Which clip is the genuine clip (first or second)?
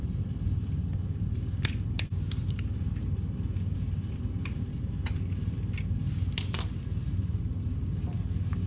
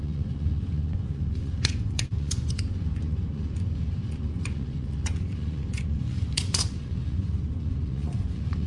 first